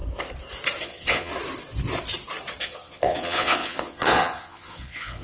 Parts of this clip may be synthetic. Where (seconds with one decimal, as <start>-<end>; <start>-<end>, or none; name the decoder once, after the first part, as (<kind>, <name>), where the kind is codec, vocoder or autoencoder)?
0.8-1.3 (vocoder, Vocos); 2.6-5.2